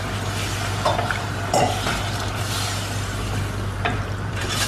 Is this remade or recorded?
remade